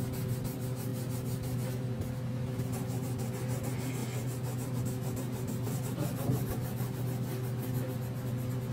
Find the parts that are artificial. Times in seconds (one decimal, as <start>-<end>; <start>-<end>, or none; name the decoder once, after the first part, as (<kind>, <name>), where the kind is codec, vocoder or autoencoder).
none